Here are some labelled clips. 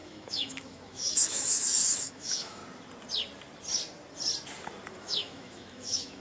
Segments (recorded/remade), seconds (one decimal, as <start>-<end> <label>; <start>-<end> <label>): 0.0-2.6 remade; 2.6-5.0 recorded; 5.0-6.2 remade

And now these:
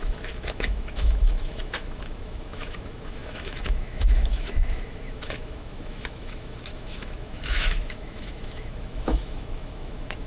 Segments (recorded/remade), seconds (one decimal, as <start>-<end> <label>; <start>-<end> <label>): 0.0-10.3 remade

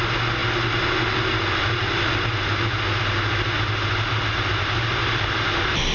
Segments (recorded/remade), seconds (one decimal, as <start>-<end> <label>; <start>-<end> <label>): 0.0-5.9 recorded